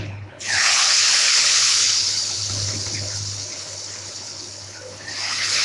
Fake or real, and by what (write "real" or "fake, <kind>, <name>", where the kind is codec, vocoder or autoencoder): fake, codec, HILCodec